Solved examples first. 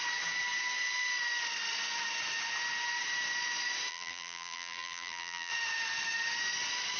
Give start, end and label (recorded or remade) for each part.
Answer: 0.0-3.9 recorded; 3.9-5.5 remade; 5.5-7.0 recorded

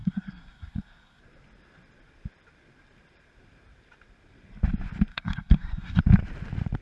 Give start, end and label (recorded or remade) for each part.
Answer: 0.0-1.2 remade; 1.2-5.1 recorded; 5.1-6.0 remade; 6.0-6.8 recorded

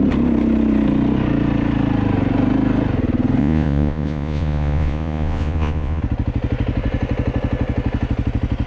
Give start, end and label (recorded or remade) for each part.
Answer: 0.0-3.4 recorded; 3.4-6.0 remade; 6.0-8.7 recorded

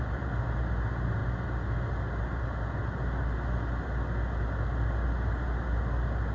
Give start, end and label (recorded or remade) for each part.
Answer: 0.0-6.3 recorded

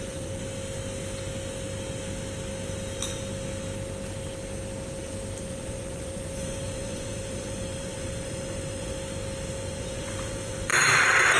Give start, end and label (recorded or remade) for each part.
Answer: 0.0-0.4 remade; 0.4-5.4 recorded; 5.4-8.9 remade; 8.9-9.5 recorded; 9.5-10.7 remade; 10.7-11.4 recorded

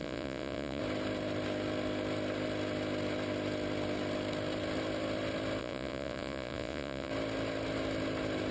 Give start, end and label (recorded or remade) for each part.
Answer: 0.0-0.8 remade; 0.8-5.6 recorded; 5.6-7.1 remade; 7.1-8.5 recorded